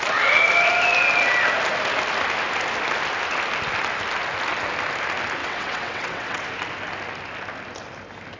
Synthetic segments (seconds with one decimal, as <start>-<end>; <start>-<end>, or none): 5.4-6.5